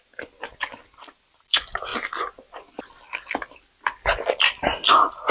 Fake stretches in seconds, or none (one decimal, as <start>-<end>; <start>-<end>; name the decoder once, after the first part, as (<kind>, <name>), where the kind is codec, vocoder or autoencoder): none